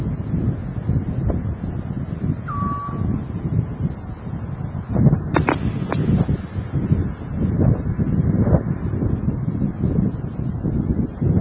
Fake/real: real